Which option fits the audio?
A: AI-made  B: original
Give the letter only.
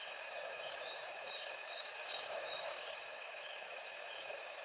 A